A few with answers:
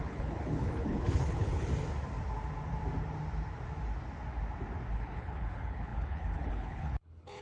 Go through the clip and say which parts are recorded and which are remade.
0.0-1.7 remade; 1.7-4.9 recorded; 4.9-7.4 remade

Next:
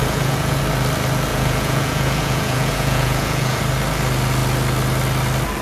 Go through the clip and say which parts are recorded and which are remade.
0.0-0.6 remade; 0.6-1.3 recorded; 1.3-3.6 remade; 3.6-5.6 recorded

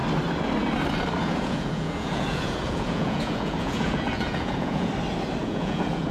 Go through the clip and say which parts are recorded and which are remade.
0.0-1.2 recorded; 1.2-4.9 remade; 4.9-5.4 recorded; 5.4-6.1 remade

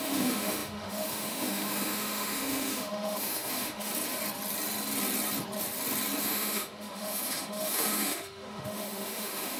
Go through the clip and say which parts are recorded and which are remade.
0.0-3.9 remade; 3.9-6.2 recorded; 6.2-9.6 remade

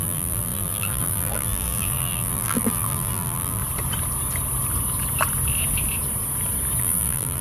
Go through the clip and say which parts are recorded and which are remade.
0.0-3.6 remade; 3.6-6.8 recorded; 6.8-7.4 remade